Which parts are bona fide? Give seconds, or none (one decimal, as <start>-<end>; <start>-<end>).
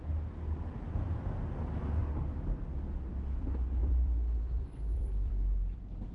0.0-3.8; 5.3-6.1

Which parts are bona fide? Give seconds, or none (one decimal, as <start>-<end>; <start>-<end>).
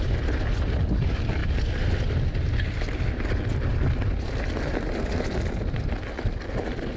0.0-7.0